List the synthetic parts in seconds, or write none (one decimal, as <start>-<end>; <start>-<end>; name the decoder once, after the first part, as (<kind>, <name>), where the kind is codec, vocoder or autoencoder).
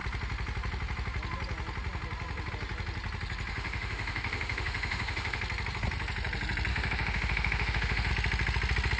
3.5-5.4 (autoencoder, DAC-VAE); 6.7-8.1